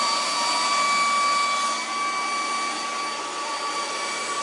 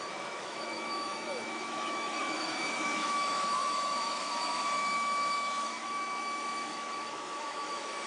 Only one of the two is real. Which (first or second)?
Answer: first